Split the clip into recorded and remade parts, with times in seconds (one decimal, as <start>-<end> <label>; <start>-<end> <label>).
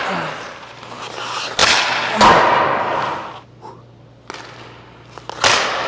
0.0-5.9 recorded